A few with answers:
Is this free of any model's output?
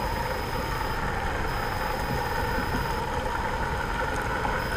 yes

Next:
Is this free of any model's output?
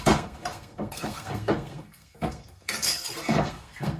no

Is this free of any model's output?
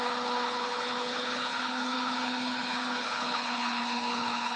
no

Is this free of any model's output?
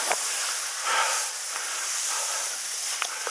yes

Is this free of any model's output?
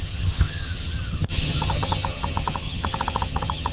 no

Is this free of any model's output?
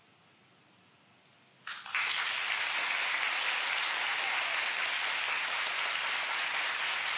yes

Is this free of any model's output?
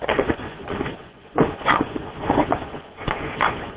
no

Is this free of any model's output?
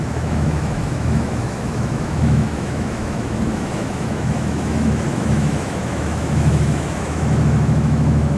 no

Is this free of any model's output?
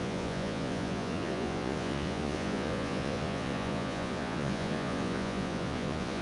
no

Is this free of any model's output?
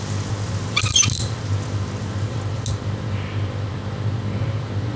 yes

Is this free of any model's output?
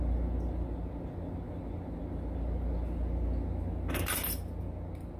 yes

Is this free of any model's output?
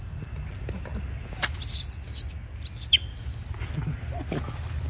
yes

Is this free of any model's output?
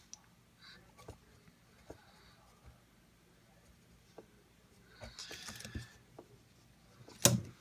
yes